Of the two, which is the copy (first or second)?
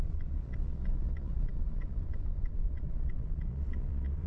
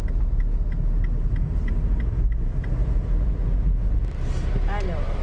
first